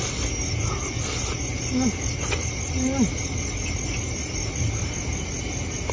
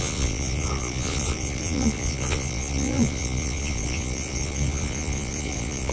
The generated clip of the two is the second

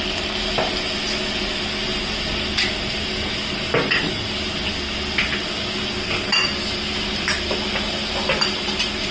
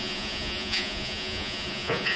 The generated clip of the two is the second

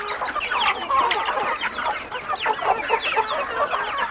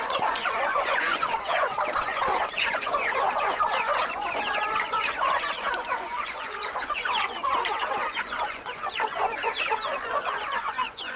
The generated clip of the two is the second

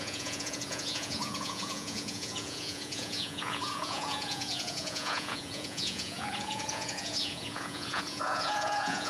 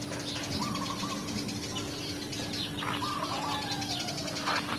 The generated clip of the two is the first